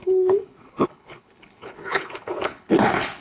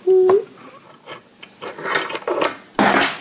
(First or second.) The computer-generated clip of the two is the first